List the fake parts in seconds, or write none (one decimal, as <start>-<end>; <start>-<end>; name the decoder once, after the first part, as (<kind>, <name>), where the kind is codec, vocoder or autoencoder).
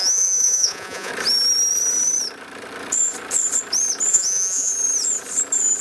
0.0-1.1 (vocoder, Vocos); 4.1-4.7